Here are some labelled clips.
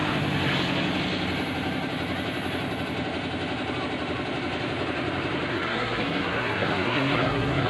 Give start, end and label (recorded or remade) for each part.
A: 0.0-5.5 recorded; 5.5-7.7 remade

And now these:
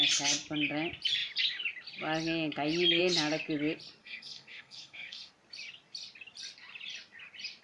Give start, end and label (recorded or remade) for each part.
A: 0.0-4.0 recorded; 4.0-5.3 remade; 5.3-7.6 recorded

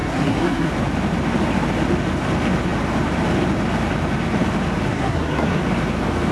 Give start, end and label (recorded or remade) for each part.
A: 0.0-0.7 remade; 0.7-4.9 recorded; 4.9-5.6 remade; 5.6-6.3 recorded

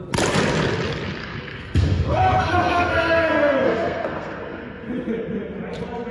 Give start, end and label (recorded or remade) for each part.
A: 0.0-1.2 recorded; 1.2-4.9 remade; 4.9-6.1 recorded

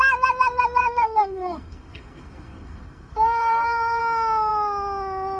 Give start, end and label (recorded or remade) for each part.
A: 0.0-0.8 recorded; 0.8-4.0 remade; 4.0-5.4 recorded